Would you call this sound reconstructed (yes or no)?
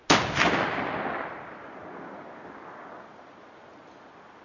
no